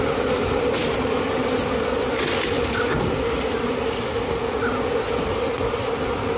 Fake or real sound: real